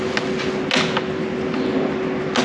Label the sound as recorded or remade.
recorded